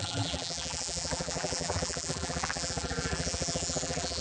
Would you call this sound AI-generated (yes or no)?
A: yes